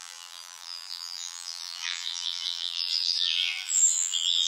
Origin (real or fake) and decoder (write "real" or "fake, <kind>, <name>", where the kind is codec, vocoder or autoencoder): fake, vocoder, BigVGAN v2